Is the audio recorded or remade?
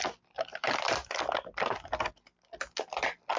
recorded